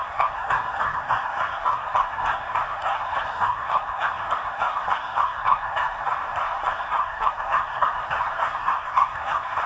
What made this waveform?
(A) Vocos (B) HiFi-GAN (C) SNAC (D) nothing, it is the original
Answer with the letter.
C